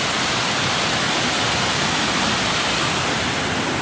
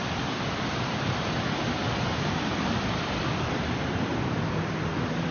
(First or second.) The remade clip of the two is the second